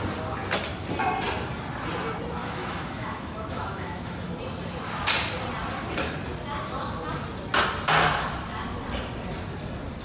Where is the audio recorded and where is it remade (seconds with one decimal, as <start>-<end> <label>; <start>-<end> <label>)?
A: 0.0-2.4 recorded; 2.4-4.3 remade; 4.3-10.0 recorded